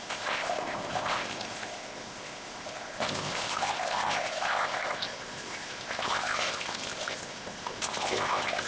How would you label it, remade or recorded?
remade